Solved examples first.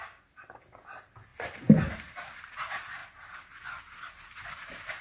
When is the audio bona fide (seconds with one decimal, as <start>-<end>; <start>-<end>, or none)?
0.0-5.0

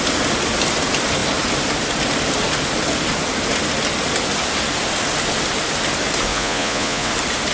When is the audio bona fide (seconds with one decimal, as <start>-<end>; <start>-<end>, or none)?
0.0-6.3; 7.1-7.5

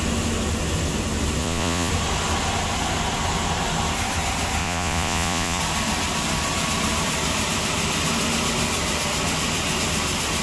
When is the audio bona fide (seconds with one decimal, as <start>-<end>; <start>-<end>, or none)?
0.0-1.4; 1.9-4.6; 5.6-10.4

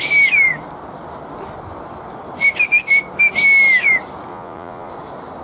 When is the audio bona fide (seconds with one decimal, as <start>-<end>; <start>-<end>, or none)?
0.0-4.3; 4.9-5.4

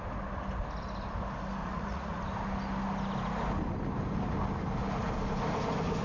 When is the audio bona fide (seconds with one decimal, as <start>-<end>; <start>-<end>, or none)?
0.0-1.6; 2.2-6.0

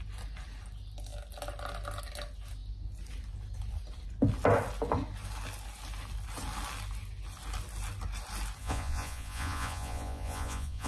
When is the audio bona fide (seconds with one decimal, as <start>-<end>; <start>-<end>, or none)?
0.0-8.6